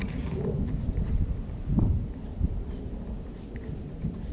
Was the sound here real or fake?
fake